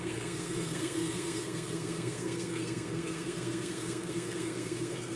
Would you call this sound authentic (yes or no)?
no